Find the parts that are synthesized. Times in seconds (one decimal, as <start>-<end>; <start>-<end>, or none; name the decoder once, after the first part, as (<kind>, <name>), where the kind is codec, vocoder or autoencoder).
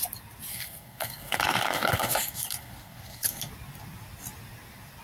0.5-3.5 (codec, SNAC)